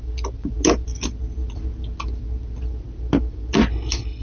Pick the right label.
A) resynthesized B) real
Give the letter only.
B